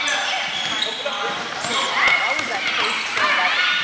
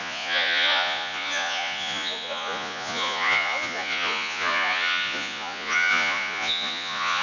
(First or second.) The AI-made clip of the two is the second